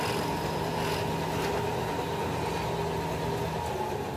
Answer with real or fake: real